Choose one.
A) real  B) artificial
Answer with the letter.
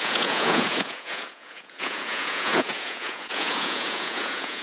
B